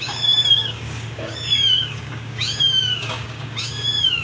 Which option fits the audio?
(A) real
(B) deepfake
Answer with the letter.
B